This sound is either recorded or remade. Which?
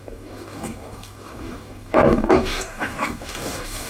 remade